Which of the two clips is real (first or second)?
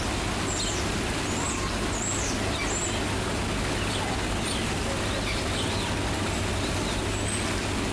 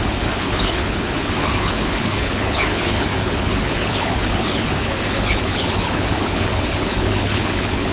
first